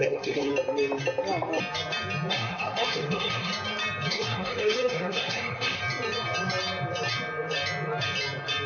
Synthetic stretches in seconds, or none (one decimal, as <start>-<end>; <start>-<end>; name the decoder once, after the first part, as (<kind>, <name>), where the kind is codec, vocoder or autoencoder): 0.0-0.5 (codec, SNAC); 2.3-3.5; 4.1-5.8